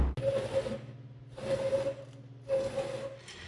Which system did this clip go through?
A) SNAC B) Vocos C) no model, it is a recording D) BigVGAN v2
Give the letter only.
C